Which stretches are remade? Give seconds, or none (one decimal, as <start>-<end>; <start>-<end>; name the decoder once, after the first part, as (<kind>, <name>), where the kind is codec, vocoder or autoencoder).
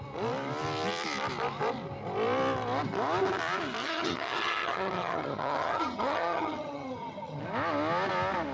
3.8-7.4 (vocoder, HiFi-GAN)